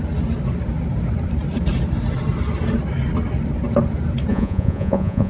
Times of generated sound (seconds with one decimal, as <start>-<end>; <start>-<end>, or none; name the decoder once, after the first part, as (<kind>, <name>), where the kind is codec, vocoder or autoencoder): 4.3-5.3 (vocoder, Vocos)